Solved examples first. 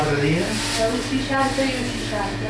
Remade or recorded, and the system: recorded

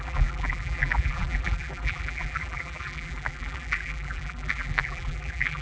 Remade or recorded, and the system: remade, vocoder, BigVGAN v2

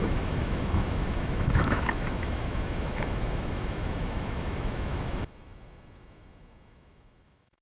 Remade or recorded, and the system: remade, autoencoder, DAC-VAE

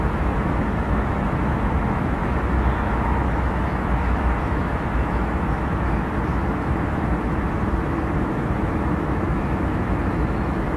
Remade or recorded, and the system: remade, autoencoder, DAC-VAE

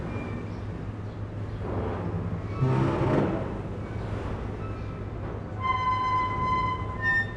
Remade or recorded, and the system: recorded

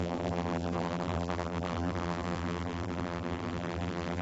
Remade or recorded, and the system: remade, vocoder, BigVGAN v2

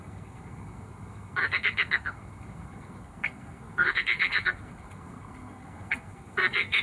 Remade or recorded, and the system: remade, codec, SNAC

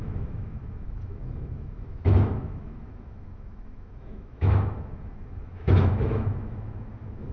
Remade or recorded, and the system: remade, autoencoder, DAC-VAE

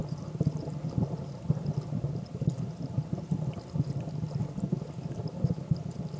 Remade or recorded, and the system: recorded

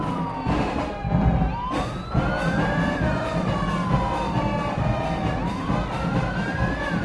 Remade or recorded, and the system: recorded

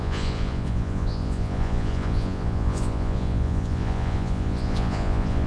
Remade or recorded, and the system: remade, vocoder, Vocos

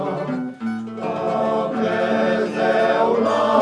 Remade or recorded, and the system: recorded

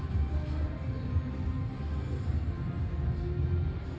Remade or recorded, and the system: recorded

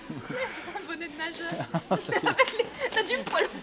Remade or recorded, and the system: recorded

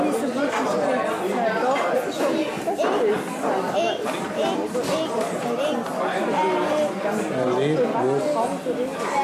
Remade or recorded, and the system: recorded